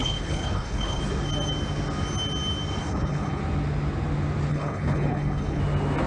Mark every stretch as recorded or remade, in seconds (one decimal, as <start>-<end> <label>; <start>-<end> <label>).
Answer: 0.0-1.0 remade; 1.0-2.8 recorded; 2.8-3.4 remade; 3.4-4.5 recorded; 4.5-5.6 remade; 5.6-6.1 recorded